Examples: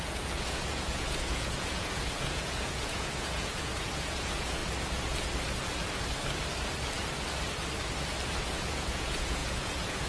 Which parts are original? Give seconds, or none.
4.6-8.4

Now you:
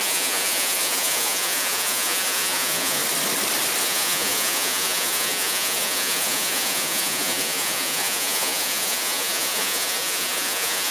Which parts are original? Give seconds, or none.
3.0-3.8

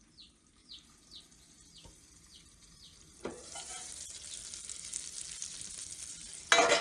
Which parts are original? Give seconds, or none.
0.0-0.6; 1.2-2.5; 3.9-6.8